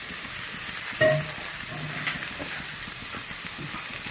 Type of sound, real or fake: real